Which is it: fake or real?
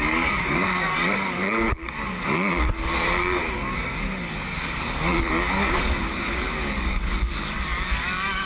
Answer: fake